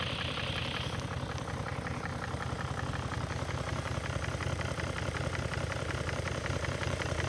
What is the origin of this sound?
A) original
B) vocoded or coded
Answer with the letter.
B